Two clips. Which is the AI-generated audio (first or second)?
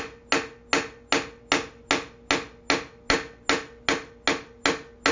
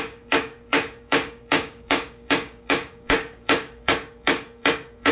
second